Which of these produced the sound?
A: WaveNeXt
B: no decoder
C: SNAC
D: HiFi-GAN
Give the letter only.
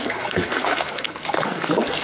C